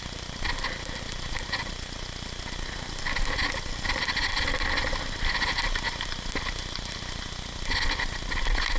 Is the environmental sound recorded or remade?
recorded